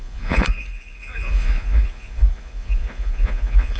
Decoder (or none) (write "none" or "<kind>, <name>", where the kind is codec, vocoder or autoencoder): vocoder, Vocos